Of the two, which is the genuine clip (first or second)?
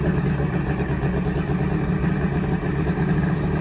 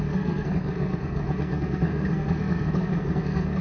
first